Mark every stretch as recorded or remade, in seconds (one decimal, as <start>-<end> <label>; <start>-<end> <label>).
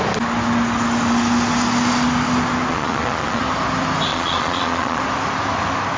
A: 0.0-2.7 recorded; 2.7-3.4 remade; 3.4-4.1 recorded; 4.1-5.0 remade; 5.0-6.0 recorded